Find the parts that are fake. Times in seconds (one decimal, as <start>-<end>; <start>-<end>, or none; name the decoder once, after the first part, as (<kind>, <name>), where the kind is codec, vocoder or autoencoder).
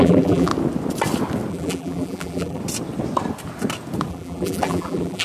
0.0-0.5 (vocoder, BigVGAN v2); 1.5-2.6; 4.1-5.2